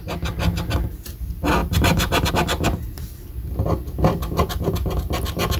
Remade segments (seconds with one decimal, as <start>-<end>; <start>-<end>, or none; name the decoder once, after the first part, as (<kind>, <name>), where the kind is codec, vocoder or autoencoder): 1.6-2.3 (vocoder, BigVGAN v2)